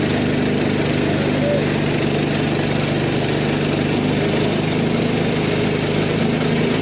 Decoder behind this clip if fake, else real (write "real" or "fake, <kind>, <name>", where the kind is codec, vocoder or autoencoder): real